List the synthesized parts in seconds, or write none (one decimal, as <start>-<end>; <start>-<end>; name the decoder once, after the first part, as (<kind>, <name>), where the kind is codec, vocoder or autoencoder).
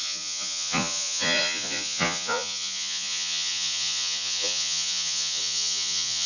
0.0-6.3 (vocoder, Vocos)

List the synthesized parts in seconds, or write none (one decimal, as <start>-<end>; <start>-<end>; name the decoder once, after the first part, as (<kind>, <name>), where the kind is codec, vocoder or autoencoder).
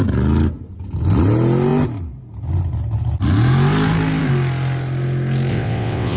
5.5-6.2 (vocoder, WaveNeXt)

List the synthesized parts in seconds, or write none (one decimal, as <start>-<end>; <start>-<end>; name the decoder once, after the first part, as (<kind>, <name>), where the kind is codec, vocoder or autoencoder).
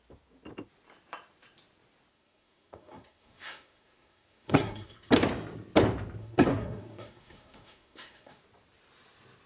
2.1-5.1 (codec, SNAC); 6.2-8.4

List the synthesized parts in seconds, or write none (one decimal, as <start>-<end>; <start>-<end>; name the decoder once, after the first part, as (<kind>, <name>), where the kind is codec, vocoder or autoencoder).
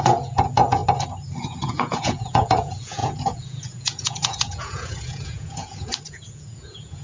0.0-0.8 (vocoder, Vocos); 1.4-7.0